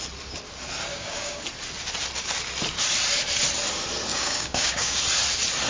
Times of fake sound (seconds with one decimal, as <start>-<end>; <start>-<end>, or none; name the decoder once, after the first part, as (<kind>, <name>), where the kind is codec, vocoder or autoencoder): 0.9-1.4 (codec, DAC); 4.1-5.0